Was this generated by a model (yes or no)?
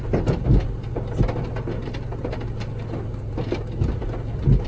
no